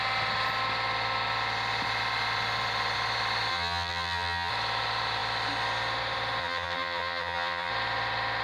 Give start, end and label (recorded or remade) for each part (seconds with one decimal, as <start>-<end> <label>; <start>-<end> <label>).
0.0-3.5 recorded; 3.5-4.5 remade; 4.5-6.4 recorded; 6.4-7.7 remade; 7.7-8.4 recorded